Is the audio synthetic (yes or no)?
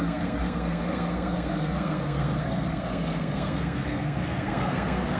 yes